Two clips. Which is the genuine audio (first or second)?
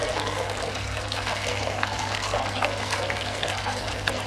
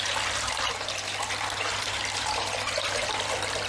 second